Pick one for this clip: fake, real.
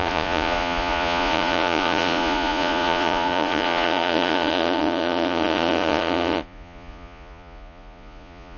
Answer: fake